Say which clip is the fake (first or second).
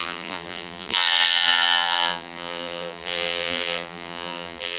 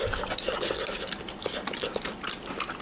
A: first